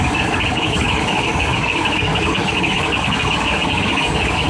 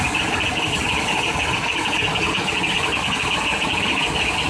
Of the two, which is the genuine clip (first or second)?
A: second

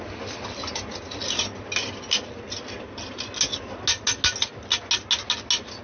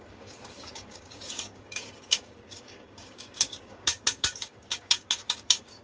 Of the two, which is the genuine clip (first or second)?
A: first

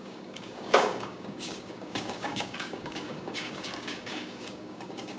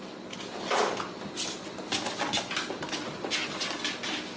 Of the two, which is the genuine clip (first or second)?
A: second